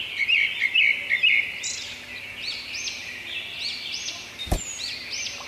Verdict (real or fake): real